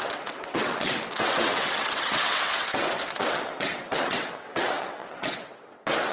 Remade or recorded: remade